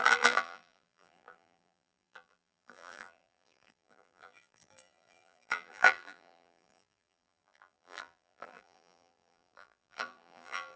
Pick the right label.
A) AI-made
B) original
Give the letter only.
A